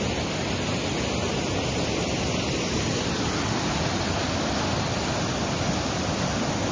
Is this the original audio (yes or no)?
yes